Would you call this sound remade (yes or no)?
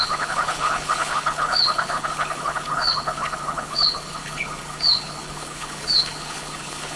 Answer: yes